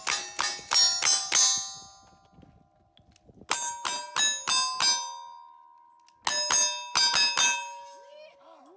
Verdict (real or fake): real